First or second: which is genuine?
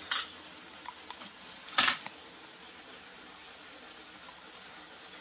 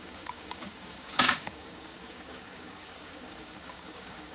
first